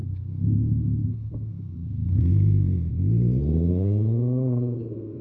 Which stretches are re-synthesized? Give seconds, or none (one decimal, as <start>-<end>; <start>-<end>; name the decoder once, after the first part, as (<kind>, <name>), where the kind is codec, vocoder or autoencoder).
0.0-2.9 (codec, SNAC); 3.7-5.2